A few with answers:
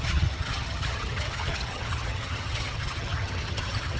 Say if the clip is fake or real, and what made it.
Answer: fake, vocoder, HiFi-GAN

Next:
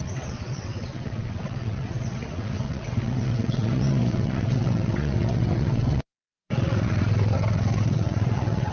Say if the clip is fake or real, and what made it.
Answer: fake, vocoder, WaveNeXt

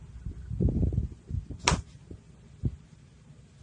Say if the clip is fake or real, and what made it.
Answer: real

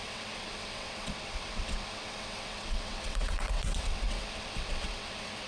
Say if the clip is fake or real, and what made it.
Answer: fake, vocoder, WaveNeXt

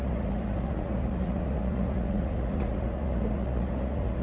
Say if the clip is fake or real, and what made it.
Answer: fake, vocoder, Vocos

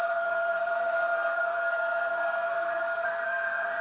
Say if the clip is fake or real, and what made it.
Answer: fake, codec, SNAC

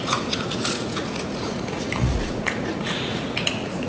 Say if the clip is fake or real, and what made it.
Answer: fake, vocoder, Vocos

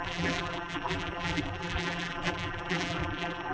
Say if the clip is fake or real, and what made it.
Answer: fake, vocoder, BigVGAN v2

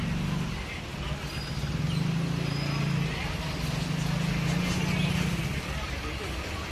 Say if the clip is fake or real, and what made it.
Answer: real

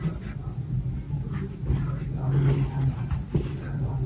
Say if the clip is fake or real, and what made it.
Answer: real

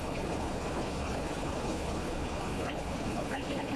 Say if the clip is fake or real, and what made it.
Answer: fake, codec, HILCodec